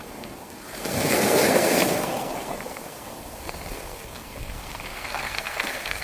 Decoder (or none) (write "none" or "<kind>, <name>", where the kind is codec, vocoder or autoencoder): codec, SNAC